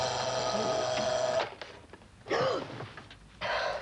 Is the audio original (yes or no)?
yes